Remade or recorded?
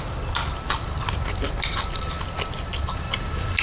recorded